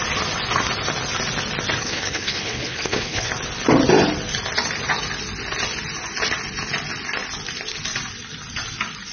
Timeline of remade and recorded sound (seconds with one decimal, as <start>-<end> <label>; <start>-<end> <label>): 0.0-1.8 recorded; 1.8-3.3 remade; 3.3-9.1 recorded

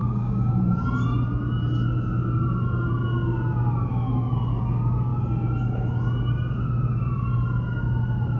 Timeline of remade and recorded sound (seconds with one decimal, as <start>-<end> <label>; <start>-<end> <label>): 0.0-0.6 remade; 0.6-8.4 recorded

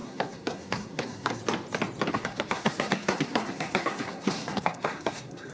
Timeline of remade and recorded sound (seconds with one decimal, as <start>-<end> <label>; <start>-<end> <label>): 0.0-1.4 remade; 1.4-2.1 recorded; 2.1-5.5 remade

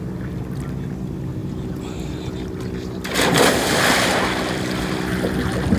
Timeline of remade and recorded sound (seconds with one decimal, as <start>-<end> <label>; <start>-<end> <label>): 0.0-5.8 recorded